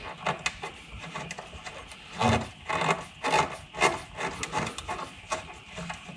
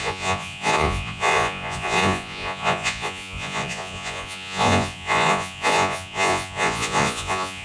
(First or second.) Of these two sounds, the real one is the first